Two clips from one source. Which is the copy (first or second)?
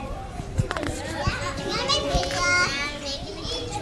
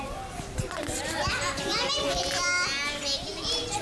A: first